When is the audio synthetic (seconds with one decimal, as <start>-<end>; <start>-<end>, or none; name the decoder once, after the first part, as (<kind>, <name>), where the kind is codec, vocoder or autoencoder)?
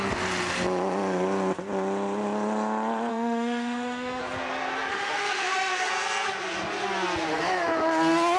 3.1-4.2 (autoencoder, DAC-VAE); 4.9-5.9